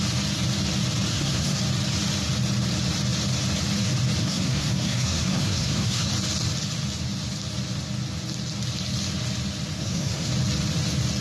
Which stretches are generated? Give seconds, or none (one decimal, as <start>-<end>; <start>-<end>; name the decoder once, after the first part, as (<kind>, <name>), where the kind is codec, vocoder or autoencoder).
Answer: 1.1-1.6 (codec, SNAC); 4.2-6.1; 9.8-10.3